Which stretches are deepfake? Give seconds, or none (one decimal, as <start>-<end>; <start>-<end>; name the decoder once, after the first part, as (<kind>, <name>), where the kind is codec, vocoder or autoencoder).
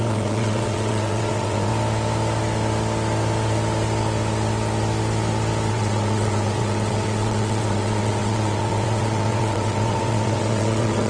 0.0-1.7 (vocoder, WaveNeXt); 5.7-11.1